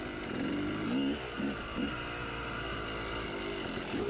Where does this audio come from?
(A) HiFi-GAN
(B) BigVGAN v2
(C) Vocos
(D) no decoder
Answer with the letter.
D